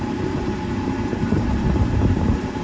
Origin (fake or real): fake